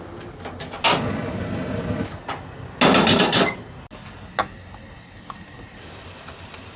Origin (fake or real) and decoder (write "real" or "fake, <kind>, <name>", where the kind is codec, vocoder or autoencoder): real